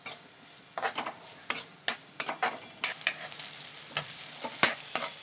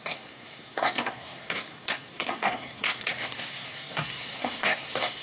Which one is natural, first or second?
first